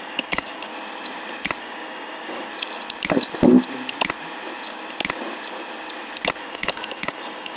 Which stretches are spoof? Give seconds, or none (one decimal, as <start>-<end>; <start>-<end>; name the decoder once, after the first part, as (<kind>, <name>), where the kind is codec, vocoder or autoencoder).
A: 0.0-0.7 (codec, DAC); 1.6-2.5; 6.4-7.6